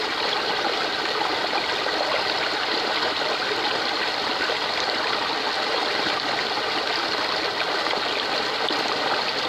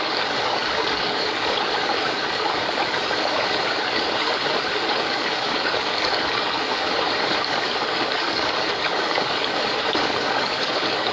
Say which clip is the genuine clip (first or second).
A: first